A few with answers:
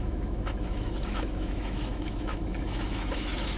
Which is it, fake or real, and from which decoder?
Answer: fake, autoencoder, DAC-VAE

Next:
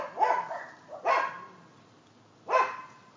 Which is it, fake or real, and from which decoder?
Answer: fake, vocoder, BigVGAN v2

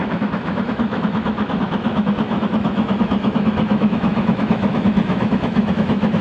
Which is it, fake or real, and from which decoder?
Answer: fake, autoencoder, DAC-VAE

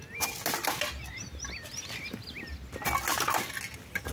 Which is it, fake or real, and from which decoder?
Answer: real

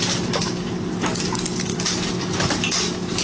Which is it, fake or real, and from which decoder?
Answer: real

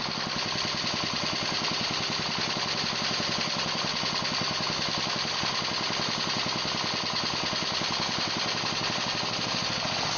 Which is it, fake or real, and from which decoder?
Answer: real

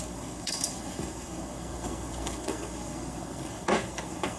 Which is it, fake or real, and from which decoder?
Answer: fake, codec, SNAC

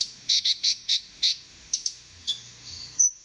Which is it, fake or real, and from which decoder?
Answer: fake, autoencoder, DAC-VAE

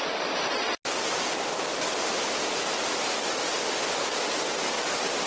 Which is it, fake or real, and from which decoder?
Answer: real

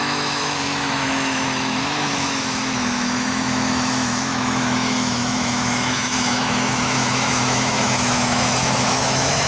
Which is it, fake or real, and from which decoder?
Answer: fake, autoencoder, DAC-VAE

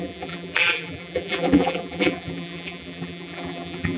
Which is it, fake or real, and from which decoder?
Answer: fake, vocoder, BigVGAN v2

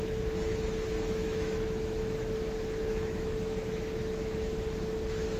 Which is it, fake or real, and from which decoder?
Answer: fake, autoencoder, DAC-VAE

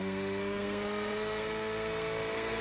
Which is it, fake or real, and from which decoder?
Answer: fake, codec, SNAC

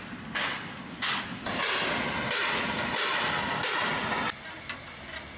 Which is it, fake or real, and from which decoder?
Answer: real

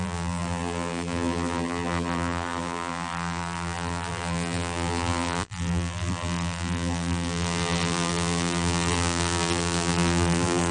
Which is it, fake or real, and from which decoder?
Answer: fake, vocoder, BigVGAN v2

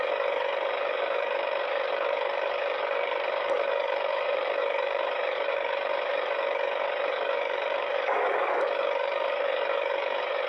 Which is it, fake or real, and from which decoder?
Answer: fake, codec, DAC